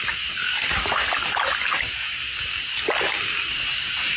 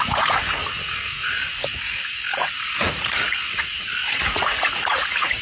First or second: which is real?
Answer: first